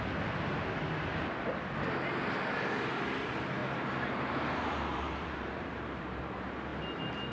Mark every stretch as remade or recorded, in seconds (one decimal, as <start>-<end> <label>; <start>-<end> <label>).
0.0-3.6 recorded; 3.6-6.2 remade; 6.2-7.3 recorded